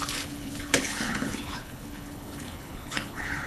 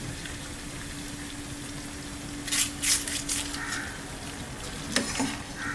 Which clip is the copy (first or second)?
first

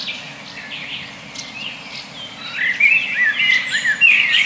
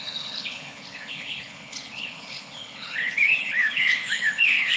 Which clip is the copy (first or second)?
second